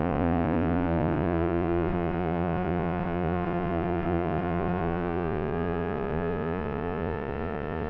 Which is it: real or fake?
fake